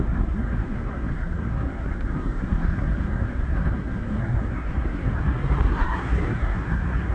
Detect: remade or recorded remade